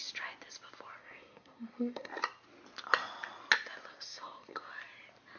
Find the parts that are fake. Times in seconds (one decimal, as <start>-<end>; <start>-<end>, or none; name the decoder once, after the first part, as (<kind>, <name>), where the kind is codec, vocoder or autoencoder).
1.0-2.1 (codec, SNAC); 3.9-4.7